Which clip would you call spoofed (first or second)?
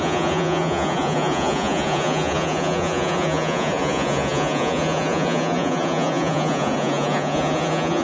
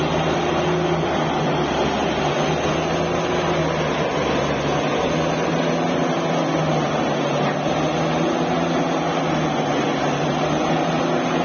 first